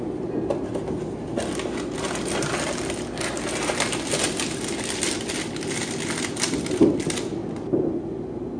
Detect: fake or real real